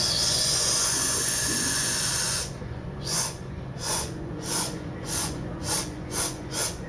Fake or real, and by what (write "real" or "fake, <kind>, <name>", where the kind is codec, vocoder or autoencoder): fake, vocoder, Vocos